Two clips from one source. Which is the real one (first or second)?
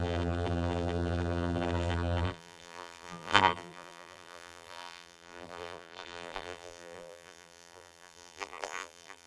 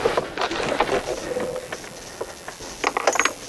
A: second